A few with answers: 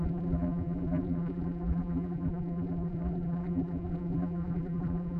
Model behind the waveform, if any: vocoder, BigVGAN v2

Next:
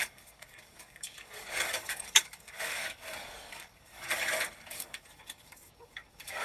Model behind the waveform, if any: codec, DAC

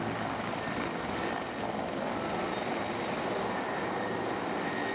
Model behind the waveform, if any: none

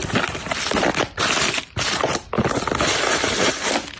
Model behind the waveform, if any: none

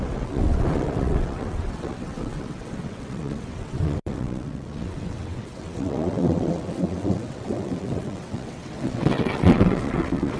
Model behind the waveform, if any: vocoder, WaveNeXt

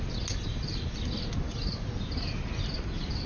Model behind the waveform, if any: none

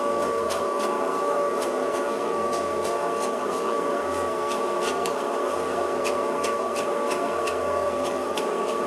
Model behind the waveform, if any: codec, SNAC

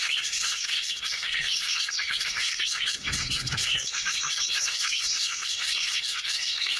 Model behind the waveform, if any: codec, SNAC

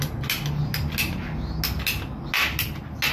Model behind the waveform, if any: none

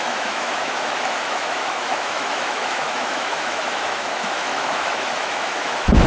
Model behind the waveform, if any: autoencoder, DAC-VAE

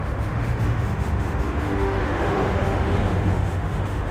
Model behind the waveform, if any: autoencoder, DAC-VAE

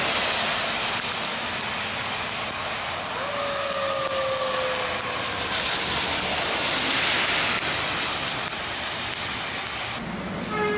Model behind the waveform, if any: none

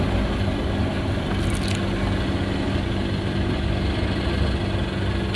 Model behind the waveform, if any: none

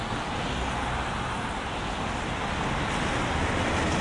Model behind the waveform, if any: none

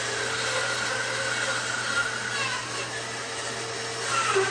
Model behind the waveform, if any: none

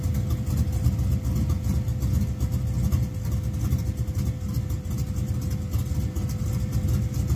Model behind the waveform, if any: none